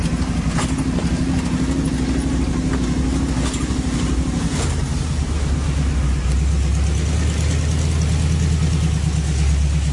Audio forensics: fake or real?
real